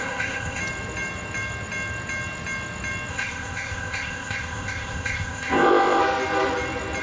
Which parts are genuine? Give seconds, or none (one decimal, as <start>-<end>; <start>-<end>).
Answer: 0.6-3.1; 6.0-7.0